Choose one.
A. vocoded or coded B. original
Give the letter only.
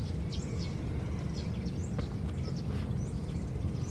B